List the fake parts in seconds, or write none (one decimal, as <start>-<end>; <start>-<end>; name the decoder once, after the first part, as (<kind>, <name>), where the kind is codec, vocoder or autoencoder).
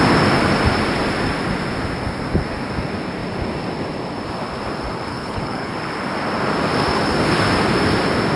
5.1-5.7 (codec, HILCodec)